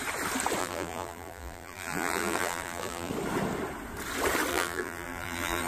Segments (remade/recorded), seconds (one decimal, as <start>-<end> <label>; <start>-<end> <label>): 0.0-0.6 recorded; 0.6-3.1 remade; 3.1-4.5 recorded; 4.5-5.7 remade